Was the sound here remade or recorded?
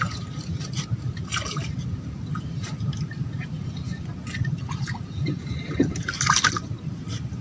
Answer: remade